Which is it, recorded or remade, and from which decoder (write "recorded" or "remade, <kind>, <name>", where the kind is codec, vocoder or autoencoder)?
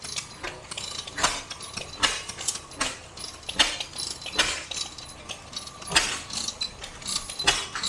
recorded